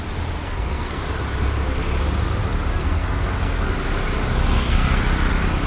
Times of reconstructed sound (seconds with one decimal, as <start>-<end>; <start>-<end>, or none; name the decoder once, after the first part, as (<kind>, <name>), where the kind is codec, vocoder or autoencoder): 0.4-1.0 (codec, SNAC); 2.7-3.7; 4.5-5.0